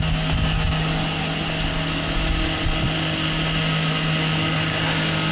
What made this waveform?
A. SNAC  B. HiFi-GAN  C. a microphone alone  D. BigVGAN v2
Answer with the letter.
C